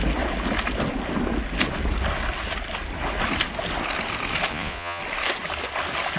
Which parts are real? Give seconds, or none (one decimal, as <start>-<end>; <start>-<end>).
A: 0.0-4.5; 5.0-6.2